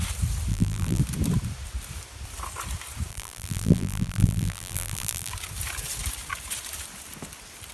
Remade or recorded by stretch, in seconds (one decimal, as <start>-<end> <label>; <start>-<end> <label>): 0.0-0.5 recorded; 0.5-1.0 remade; 1.0-3.1 recorded; 3.1-5.3 remade; 5.3-7.7 recorded